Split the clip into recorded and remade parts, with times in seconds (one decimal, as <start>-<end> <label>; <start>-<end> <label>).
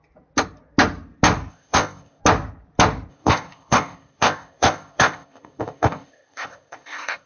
0.0-1.5 recorded; 1.5-2.2 remade; 2.2-3.1 recorded; 3.1-7.3 remade